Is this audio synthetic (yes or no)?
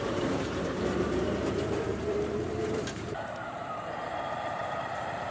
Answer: yes